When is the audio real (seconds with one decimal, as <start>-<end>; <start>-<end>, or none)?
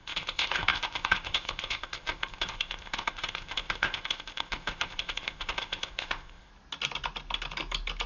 6.5-8.1